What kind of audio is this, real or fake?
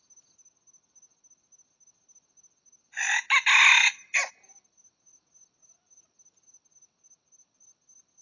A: real